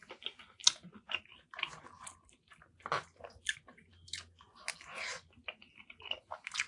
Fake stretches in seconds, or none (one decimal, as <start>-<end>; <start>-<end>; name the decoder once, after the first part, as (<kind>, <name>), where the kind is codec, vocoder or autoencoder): none